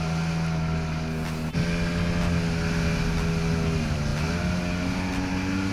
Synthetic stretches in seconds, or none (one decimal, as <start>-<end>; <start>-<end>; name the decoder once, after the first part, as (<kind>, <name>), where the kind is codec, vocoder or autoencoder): none